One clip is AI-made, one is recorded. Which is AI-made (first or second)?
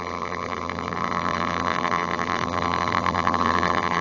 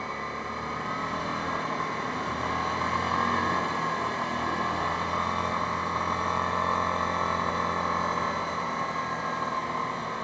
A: first